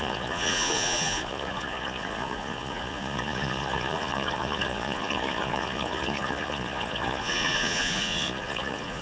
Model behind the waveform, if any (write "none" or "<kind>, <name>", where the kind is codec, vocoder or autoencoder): vocoder, Vocos